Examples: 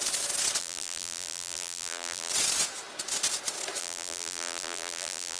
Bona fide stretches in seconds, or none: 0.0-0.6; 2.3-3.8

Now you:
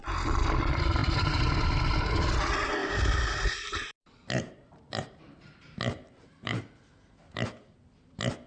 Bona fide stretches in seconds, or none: 0.0-1.0; 1.5-2.8; 6.6-8.5

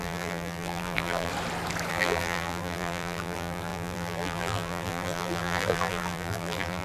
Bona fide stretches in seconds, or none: 1.3-1.9

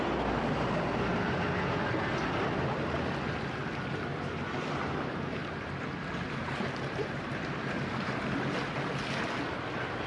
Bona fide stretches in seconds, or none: 0.0-6.4; 7.3-10.1

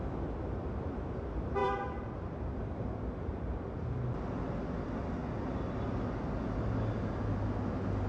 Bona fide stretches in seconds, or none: 0.0-1.6; 2.6-8.1

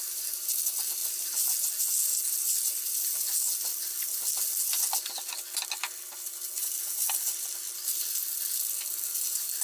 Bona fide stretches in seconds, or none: 0.0-9.6

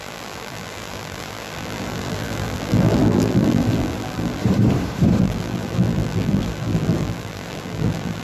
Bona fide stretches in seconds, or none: 4.4-5.2

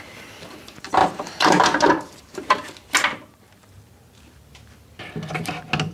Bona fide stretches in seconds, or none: 0.0-1.0; 4.5-5.9